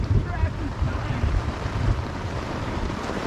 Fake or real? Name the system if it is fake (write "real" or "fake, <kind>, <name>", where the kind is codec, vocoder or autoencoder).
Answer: fake, vocoder, BigVGAN v2